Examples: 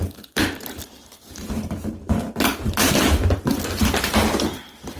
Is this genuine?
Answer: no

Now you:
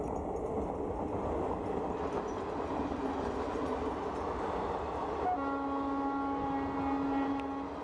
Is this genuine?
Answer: yes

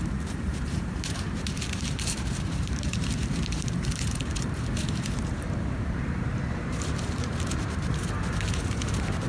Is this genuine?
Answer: no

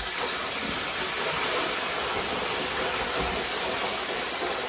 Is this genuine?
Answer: yes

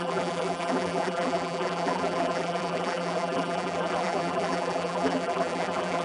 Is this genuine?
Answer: no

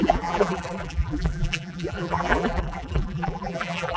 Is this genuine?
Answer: no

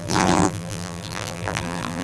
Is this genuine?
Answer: no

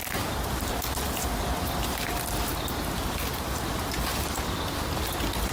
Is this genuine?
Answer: yes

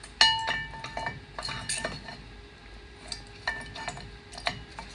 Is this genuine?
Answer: yes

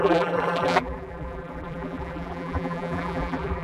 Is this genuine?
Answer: no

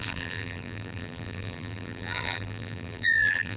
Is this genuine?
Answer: no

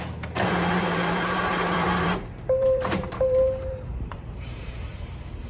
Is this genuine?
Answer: no